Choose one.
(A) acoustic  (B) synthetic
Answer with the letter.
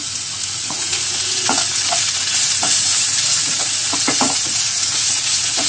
B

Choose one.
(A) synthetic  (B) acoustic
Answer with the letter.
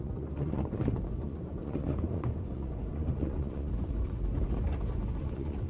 A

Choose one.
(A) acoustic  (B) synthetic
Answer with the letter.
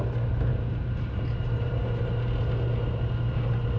A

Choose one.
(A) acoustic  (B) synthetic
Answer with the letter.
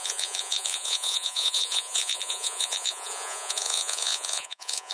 B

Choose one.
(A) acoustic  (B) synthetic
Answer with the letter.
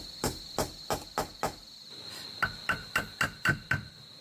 A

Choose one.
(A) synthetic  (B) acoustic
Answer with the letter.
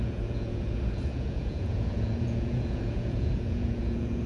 A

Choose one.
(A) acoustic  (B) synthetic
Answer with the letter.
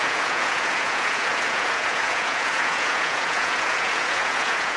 B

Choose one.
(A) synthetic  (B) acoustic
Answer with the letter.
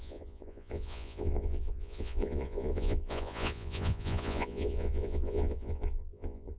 A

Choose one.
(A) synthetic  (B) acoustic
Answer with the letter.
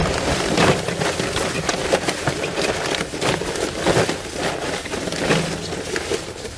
B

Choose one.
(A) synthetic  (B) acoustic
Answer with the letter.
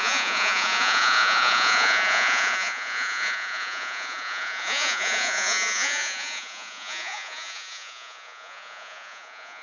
A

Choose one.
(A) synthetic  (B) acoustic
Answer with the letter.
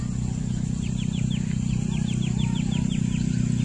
B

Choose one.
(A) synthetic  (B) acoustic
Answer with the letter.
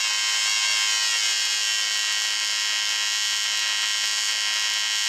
B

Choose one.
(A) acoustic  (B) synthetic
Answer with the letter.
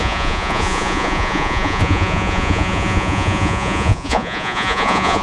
B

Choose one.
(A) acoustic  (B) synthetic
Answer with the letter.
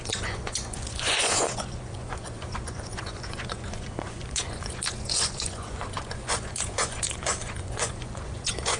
B